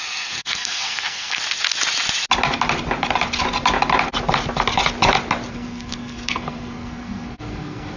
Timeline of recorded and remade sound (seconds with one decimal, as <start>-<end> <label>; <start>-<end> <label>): 0.0-1.4 remade; 1.4-5.5 recorded; 5.5-8.0 remade